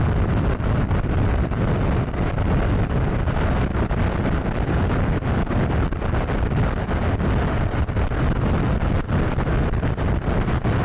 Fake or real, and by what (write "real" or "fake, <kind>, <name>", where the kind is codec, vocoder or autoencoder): real